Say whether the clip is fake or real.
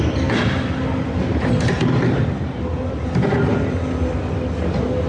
real